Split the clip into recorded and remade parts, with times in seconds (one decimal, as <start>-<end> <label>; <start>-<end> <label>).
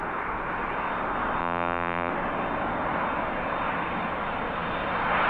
0.0-1.4 recorded; 1.4-2.1 remade; 2.1-5.3 recorded